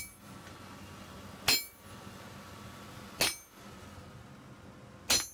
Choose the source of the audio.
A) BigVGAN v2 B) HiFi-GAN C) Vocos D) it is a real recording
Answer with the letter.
D